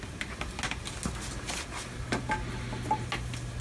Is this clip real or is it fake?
real